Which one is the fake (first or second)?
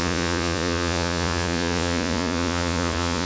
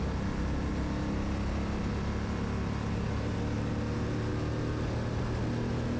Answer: first